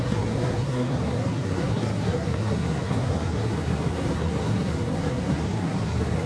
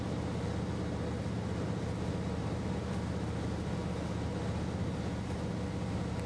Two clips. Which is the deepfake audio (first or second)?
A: first